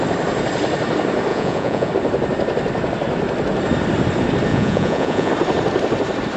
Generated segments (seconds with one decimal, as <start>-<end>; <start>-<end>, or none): 1.3-1.9; 4.5-5.3